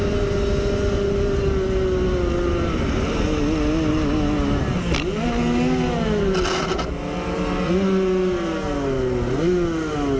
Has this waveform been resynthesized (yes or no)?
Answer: no